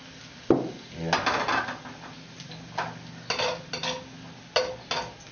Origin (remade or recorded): recorded